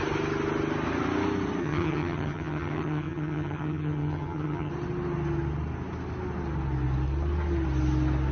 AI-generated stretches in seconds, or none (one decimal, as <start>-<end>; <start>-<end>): 1.6-4.7